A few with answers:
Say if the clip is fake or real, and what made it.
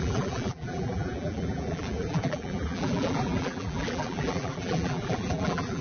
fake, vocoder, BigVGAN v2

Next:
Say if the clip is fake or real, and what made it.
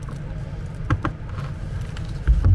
real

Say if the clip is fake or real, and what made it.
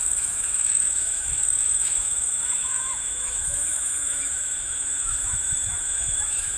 fake, autoencoder, DAC-VAE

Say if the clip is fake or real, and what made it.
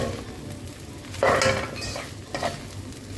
real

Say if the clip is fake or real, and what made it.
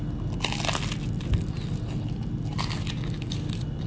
real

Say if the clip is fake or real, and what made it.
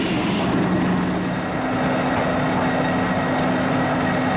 real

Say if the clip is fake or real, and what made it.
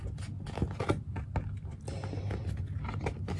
real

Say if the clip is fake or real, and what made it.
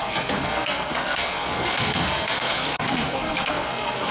fake, codec, SNAC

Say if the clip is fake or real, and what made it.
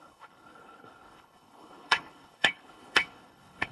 fake, codec, HILCodec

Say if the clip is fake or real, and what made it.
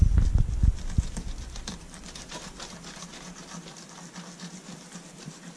real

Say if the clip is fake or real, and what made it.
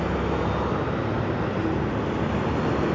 real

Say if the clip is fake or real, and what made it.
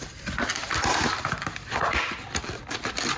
fake, vocoder, BigVGAN v2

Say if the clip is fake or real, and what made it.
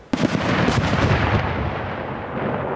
real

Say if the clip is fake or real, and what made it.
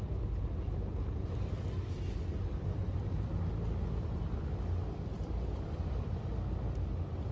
real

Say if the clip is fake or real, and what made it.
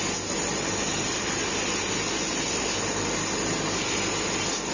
real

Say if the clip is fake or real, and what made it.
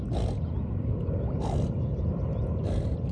real